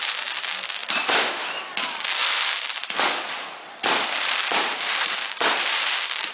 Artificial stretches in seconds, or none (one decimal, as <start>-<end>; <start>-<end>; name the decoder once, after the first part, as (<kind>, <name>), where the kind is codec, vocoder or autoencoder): 0.8-1.4 (vocoder, BigVGAN v2); 2.2-6.3